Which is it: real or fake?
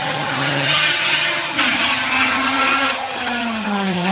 fake